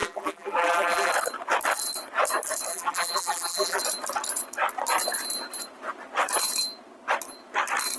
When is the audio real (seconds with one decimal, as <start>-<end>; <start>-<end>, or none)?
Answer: 1.1-2.7; 3.8-8.0